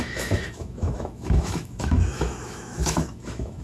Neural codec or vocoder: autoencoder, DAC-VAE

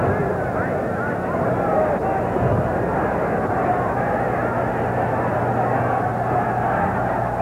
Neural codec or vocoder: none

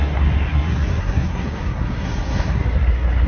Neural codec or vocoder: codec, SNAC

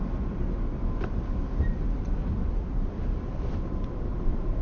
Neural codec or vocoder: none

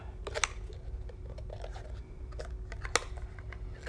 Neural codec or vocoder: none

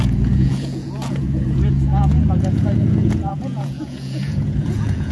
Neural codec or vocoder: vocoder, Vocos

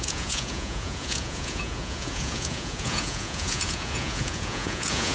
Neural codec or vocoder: vocoder, Vocos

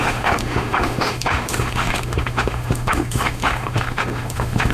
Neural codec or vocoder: autoencoder, DAC-VAE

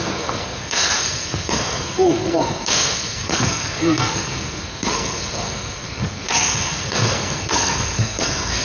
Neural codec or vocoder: codec, SNAC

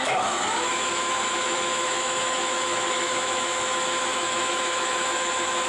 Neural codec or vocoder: autoencoder, DAC-VAE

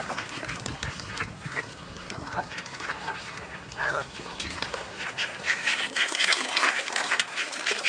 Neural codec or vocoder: codec, SNAC